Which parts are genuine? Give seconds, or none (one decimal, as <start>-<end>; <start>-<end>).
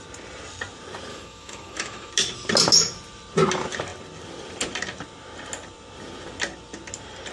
0.0-1.1; 2.1-7.3